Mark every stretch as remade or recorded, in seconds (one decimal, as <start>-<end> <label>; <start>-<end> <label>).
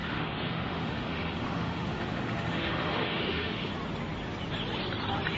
0.0-3.7 remade; 3.7-5.4 recorded